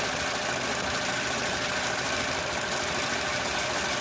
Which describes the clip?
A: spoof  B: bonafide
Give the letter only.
B